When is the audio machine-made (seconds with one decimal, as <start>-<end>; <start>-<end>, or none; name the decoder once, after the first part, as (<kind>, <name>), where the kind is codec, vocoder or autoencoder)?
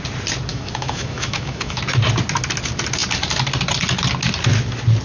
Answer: 0.5-1.8 (autoencoder, DAC-VAE)